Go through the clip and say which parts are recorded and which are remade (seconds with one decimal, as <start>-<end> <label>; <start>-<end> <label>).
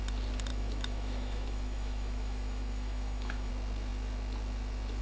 0.0-0.5 recorded; 0.5-3.5 remade; 3.5-5.0 recorded